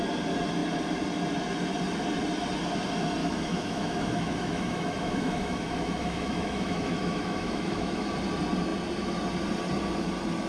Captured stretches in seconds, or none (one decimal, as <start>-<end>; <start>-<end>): 0.0-3.2; 8.1-10.5